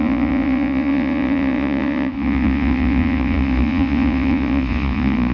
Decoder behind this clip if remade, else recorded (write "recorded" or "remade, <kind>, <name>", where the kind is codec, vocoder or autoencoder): remade, vocoder, Vocos